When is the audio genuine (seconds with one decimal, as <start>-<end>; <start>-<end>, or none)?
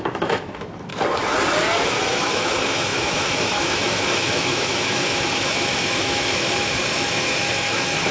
0.9-2.1